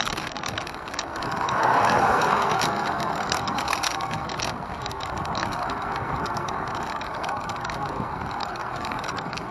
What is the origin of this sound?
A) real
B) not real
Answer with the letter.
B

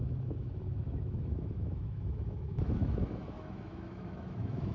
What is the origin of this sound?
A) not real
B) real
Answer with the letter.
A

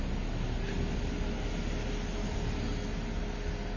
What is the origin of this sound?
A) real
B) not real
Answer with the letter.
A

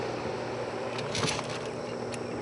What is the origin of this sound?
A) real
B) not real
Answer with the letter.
A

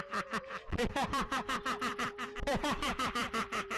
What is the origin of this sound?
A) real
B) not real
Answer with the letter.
B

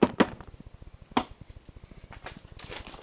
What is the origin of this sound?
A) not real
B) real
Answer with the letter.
B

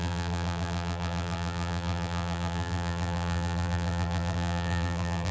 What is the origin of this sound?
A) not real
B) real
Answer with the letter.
A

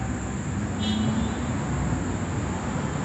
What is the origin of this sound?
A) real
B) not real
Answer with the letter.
A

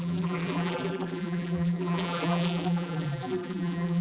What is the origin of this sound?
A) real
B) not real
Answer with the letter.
B